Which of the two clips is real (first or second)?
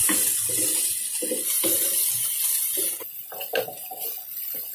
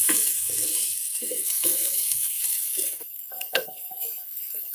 first